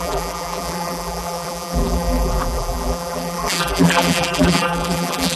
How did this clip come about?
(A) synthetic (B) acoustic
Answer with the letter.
A